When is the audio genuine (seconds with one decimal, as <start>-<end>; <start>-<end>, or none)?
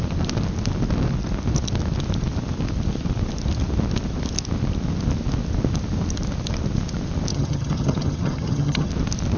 0.0-7.3; 8.9-9.4